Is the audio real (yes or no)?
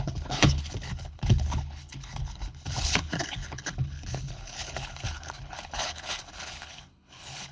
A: no